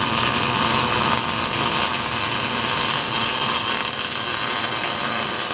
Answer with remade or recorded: recorded